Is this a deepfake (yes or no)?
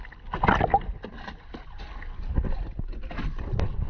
no